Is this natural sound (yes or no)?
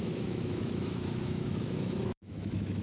no